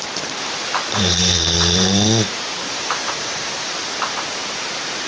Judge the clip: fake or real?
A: fake